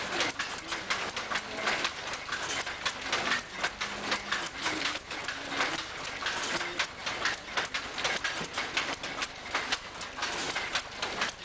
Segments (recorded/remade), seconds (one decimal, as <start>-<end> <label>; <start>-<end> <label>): 0.0-4.6 recorded; 4.6-5.2 remade; 5.2-11.4 recorded

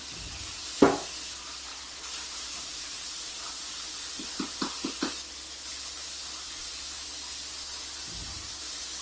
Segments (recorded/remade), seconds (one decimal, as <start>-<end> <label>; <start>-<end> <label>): 0.0-1.7 recorded; 1.7-5.0 remade; 5.0-9.0 recorded

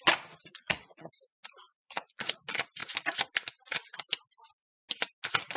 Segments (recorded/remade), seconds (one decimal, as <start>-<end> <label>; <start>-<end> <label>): 0.0-0.5 recorded; 0.5-1.1 remade; 1.1-1.7 recorded; 1.7-2.4 remade; 2.4-5.6 recorded

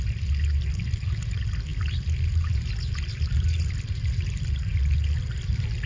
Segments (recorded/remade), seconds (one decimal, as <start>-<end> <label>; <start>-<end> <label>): 0.0-5.9 recorded

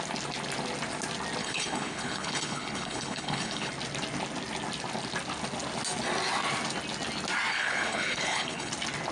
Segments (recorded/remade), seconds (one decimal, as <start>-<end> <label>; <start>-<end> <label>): 0.0-1.4 recorded; 1.4-3.7 remade; 3.7-7.5 recorded; 7.5-8.7 remade; 8.7-9.1 recorded

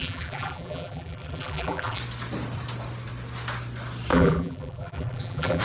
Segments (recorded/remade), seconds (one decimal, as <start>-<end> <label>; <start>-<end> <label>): 0.0-2.0 remade; 2.0-4.1 recorded; 4.1-5.6 remade

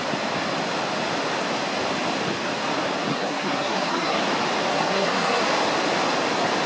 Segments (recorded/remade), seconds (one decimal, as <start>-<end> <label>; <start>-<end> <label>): 0.0-3.1 recorded; 3.1-4.2 remade; 4.2-4.7 recorded; 4.7-5.4 remade; 5.4-6.7 recorded

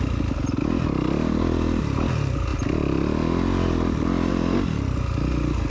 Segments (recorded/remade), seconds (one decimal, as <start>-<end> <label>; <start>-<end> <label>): 0.0-5.7 recorded